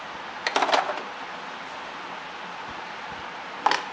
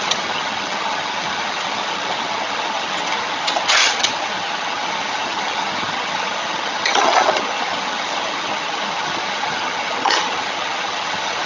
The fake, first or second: second